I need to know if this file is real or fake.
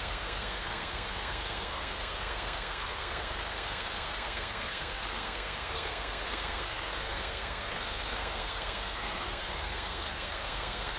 fake